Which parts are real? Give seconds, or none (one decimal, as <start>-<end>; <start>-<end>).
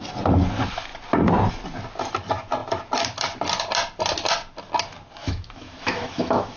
0.0-5.2